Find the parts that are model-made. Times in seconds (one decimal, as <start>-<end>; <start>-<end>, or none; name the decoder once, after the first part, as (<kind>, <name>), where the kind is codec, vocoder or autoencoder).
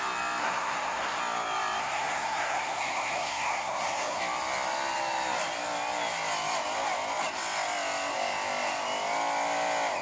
0.4-1.2 (codec, SNAC); 1.8-4.2